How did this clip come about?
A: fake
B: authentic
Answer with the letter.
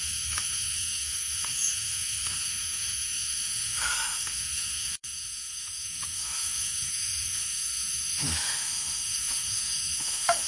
A